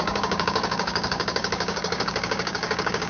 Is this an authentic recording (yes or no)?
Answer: no